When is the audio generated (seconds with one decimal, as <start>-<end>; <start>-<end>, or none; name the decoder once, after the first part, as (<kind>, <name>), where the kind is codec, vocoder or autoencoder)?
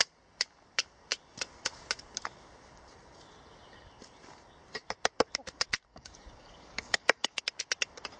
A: 5.9-7.4 (codec, DAC)